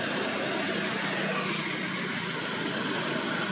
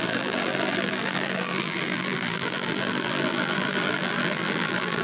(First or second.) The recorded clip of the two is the first